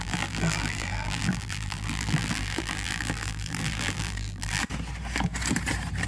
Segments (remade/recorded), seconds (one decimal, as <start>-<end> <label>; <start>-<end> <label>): 0.0-4.6 remade; 4.6-6.1 recorded